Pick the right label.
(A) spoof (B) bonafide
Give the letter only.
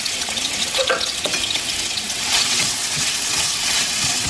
A